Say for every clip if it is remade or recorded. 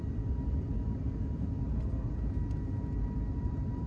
remade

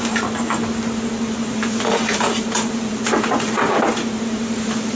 remade